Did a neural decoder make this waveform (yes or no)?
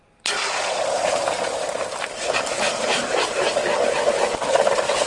no